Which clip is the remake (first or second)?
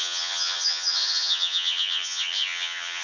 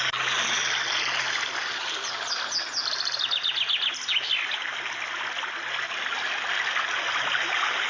first